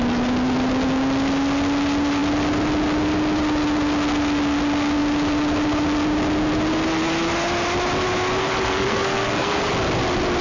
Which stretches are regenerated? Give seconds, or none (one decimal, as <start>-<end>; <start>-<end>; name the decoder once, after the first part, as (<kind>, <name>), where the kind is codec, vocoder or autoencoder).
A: 8.4-9.6 (codec, SNAC)